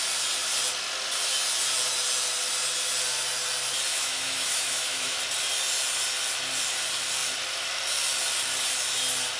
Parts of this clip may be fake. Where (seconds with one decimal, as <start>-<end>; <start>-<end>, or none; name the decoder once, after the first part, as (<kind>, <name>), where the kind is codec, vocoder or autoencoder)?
3.9-5.2 (autoencoder, DAC-VAE)